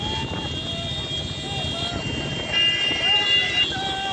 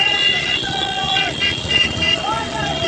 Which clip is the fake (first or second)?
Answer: second